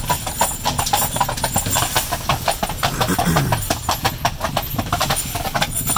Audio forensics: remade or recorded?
recorded